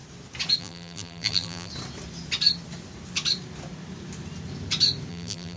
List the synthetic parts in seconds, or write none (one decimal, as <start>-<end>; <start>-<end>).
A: 0.6-1.7; 5.1-5.6